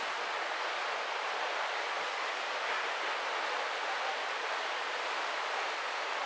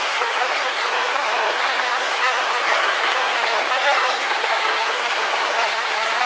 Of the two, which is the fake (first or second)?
second